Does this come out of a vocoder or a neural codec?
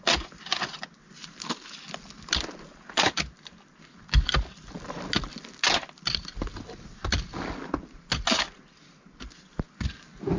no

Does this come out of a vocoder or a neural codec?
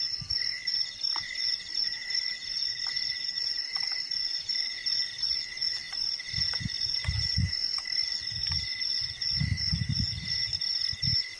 no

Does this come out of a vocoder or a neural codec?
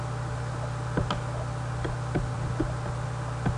no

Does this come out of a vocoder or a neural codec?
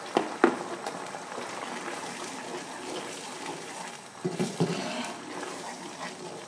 no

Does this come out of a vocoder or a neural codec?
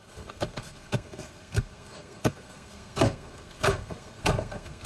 yes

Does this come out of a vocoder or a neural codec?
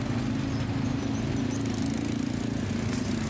no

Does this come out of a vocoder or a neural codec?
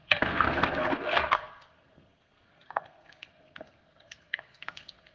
yes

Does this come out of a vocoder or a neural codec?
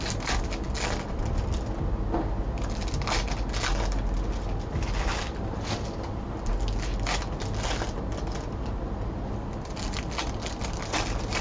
no